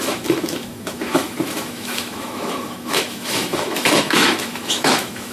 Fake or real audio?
fake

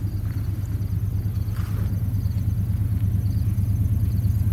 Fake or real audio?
real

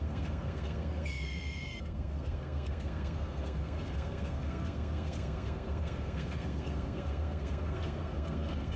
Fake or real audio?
fake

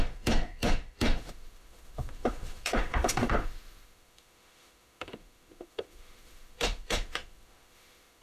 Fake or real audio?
fake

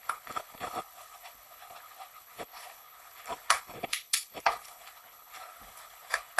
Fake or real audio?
fake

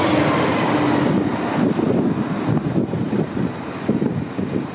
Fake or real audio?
real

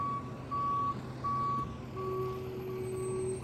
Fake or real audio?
real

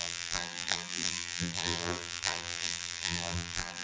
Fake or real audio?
fake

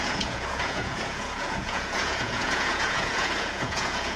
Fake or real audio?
fake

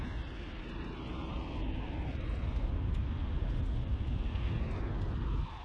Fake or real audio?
real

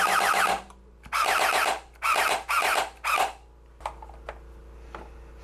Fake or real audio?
real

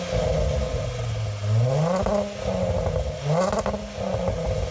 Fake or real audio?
real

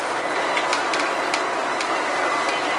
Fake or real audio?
real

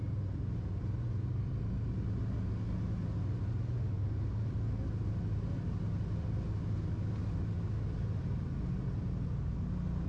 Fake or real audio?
real